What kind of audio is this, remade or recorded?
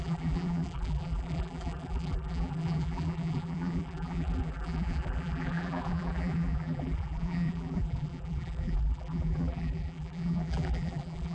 remade